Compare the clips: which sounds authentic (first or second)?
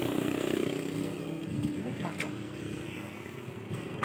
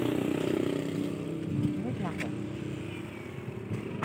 second